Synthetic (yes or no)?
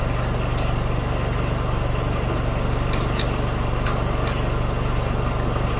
no